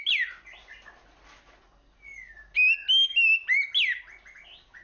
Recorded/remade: recorded